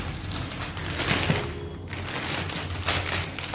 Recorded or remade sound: recorded